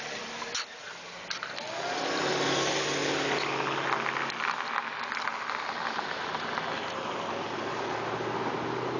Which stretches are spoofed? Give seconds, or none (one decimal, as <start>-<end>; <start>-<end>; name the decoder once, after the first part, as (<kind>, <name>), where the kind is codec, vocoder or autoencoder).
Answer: none